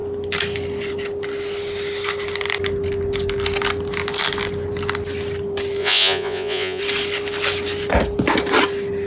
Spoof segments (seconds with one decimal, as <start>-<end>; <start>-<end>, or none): 5.8-6.8